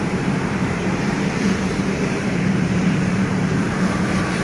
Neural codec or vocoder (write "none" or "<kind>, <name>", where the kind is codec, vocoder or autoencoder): vocoder, BigVGAN v2